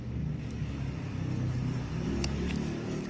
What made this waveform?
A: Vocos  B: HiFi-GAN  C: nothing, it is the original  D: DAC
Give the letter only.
D